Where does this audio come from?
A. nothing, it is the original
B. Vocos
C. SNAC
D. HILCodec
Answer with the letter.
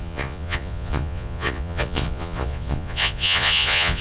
B